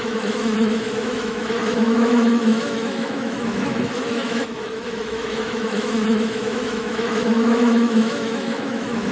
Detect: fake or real fake